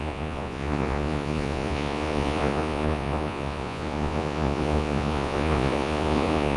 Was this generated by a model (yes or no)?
yes